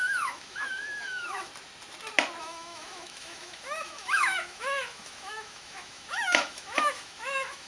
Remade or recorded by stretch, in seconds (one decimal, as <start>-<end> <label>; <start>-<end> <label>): 0.0-1.5 remade; 1.5-2.4 recorded; 2.4-7.7 remade